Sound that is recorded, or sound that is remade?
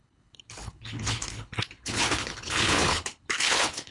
remade